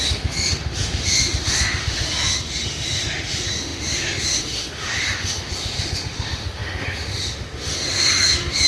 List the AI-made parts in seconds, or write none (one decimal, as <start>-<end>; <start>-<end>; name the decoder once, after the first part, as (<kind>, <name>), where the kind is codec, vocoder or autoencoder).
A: 0.0-8.7 (autoencoder, DAC-VAE)